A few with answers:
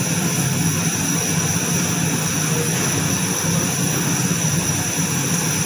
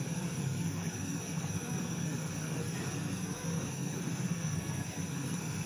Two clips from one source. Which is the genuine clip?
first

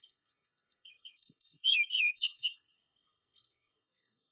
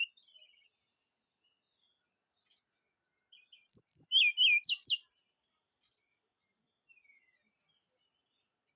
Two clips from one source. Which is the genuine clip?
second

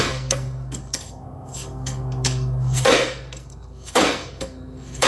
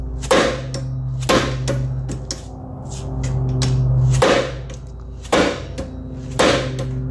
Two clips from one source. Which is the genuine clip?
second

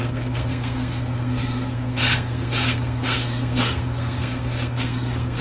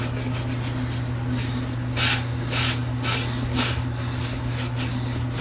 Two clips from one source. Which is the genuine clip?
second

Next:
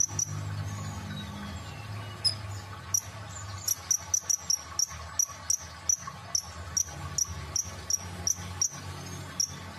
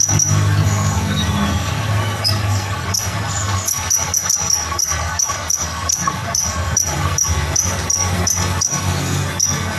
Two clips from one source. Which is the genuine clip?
first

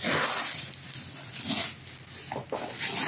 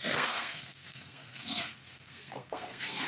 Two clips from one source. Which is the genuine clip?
first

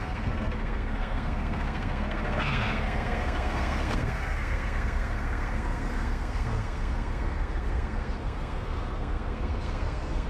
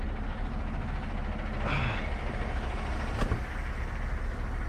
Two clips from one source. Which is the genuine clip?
second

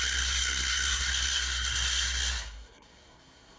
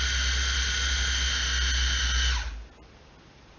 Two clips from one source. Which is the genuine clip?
second